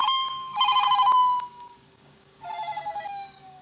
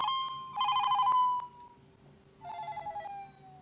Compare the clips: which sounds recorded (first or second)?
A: second